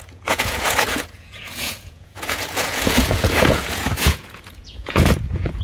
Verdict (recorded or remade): remade